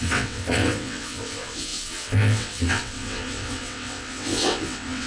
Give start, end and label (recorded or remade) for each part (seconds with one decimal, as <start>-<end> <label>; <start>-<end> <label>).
0.0-5.1 remade